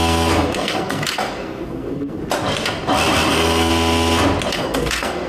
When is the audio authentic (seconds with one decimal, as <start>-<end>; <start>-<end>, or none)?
2.2-3.3; 3.7-4.5